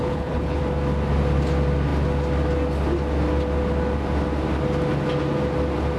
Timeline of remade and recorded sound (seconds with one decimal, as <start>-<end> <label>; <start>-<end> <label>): 0.0-0.6 remade; 0.6-6.0 recorded